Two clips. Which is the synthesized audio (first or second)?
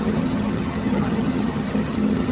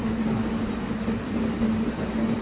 first